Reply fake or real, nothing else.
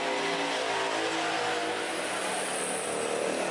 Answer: real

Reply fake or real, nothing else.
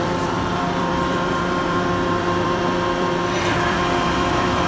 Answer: fake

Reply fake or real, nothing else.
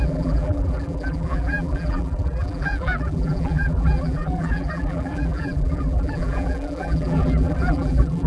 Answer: fake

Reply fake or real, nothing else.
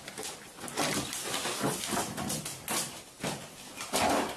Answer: real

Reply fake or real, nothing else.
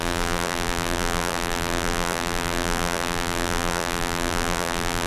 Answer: fake